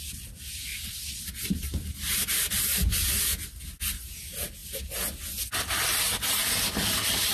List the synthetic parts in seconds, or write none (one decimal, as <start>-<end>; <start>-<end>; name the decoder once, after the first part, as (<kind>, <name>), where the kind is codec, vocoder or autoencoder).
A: none